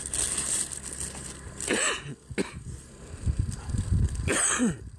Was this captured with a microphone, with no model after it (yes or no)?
yes